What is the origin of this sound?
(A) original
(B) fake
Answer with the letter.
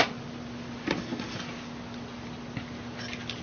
A